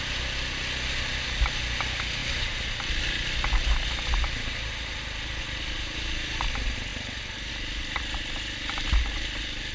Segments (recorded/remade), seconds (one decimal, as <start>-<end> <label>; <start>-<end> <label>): 0.0-9.7 recorded